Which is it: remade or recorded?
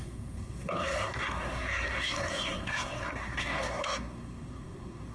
remade